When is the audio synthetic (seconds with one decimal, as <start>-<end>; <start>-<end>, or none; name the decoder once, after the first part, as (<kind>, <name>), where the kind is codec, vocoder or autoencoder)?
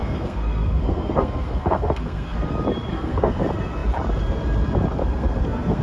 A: 0.0-2.5 (codec, SNAC); 2.9-3.4; 5.0-5.8